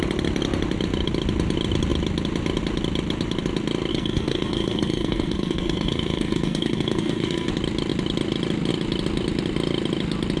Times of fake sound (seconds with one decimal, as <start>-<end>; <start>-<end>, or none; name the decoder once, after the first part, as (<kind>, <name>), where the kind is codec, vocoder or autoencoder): 3.9-7.5 (codec, SNAC)

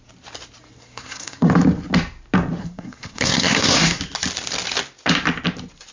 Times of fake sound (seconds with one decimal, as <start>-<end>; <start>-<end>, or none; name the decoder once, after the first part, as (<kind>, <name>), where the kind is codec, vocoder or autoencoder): 0.8-1.5 (codec, SNAC); 2.6-4.0

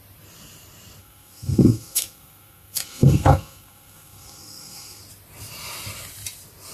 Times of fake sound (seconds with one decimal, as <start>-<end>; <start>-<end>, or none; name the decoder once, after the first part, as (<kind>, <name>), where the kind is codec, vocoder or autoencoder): 1.0-5.0 (codec, SNAC)

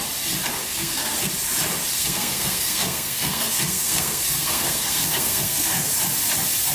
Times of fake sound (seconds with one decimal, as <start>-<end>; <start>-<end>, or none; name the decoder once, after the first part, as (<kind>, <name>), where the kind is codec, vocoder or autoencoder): 0.6-1.3 (codec, SNAC); 1.9-5.9

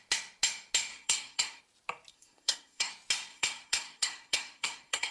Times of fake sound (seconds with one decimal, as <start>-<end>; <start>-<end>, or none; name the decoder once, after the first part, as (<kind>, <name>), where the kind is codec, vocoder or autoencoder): 0.9-1.6 (codec, SNAC); 2.1-2.9; 3.3-5.1

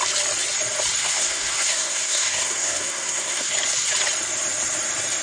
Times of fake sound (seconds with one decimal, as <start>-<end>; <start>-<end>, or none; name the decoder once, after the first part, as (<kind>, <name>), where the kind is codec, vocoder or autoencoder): 1.0-3.5 (codec, SNAC)